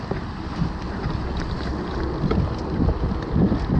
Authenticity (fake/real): real